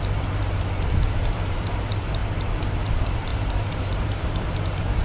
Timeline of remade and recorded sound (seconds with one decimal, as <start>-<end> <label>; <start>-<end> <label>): 0.0-2.2 remade; 2.2-2.9 recorded; 2.9-5.0 remade